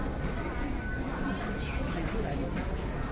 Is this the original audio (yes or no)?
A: yes